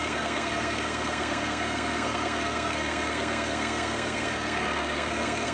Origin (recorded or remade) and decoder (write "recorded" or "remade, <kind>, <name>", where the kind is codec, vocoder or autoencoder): remade, codec, SNAC